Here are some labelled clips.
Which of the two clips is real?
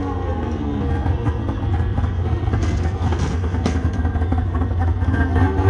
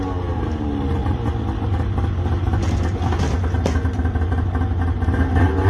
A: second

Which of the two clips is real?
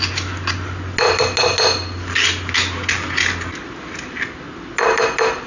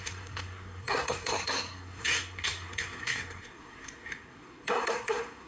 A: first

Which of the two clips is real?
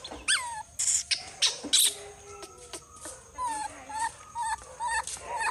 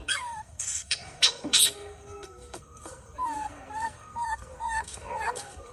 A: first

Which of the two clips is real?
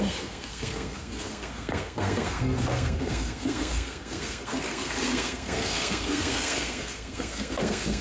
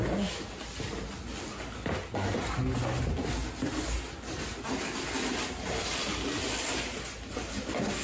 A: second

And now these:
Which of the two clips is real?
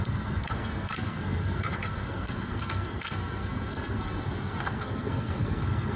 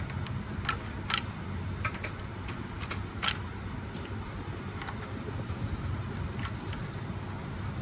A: second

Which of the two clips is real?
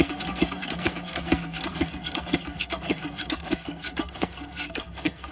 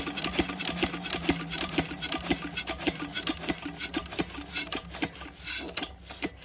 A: second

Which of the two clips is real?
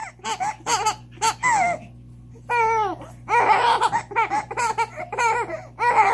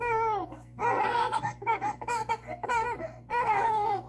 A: first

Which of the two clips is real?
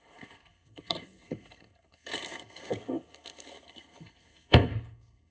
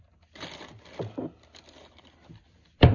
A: second